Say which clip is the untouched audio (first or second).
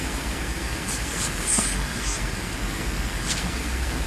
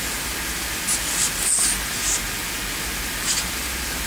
second